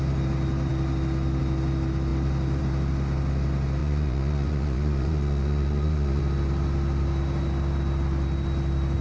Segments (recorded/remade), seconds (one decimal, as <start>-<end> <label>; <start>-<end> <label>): 0.0-3.8 recorded; 3.8-6.2 remade; 6.2-9.0 recorded